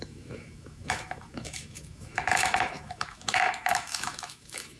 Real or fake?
fake